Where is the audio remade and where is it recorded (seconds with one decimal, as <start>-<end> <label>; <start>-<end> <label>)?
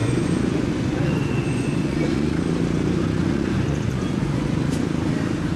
0.0-2.4 remade; 2.4-3.2 recorded; 3.2-4.8 remade; 4.8-5.6 recorded